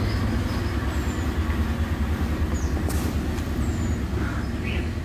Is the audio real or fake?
real